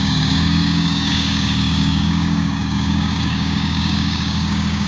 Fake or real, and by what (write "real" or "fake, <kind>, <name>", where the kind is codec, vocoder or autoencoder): fake, codec, DAC